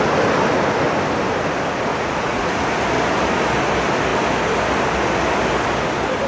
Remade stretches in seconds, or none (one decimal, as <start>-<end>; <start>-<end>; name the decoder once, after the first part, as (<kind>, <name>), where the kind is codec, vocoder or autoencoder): 1.9-2.6 (vocoder, Vocos)